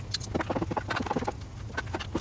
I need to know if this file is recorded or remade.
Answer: recorded